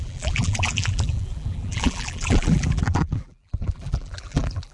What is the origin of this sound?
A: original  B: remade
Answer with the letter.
B